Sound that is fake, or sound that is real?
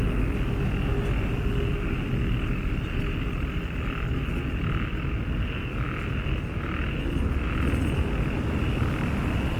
real